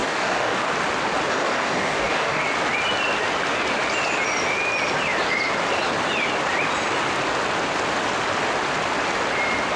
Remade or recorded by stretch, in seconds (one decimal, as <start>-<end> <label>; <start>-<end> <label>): 0.0-0.7 remade; 0.7-1.3 recorded; 1.3-2.4 remade; 2.4-9.8 recorded